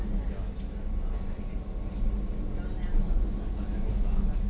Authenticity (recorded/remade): recorded